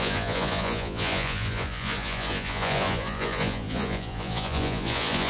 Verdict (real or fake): fake